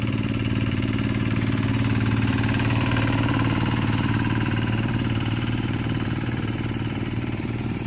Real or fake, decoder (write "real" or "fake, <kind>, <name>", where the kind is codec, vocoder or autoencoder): fake, vocoder, BigVGAN v2